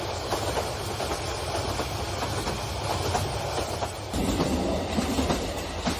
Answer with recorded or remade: recorded